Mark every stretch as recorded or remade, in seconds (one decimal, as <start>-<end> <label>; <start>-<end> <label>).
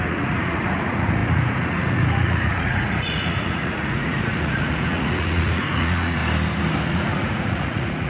0.0-6.2 remade; 6.2-6.9 recorded; 6.9-8.1 remade